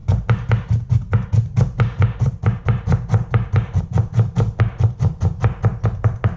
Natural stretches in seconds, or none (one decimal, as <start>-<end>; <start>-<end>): 0.0-6.4